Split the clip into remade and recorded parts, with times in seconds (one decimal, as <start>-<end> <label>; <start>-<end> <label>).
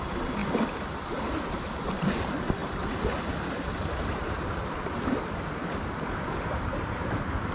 0.0-7.5 remade